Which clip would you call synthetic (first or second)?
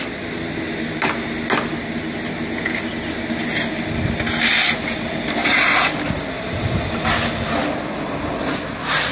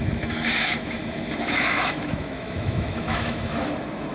second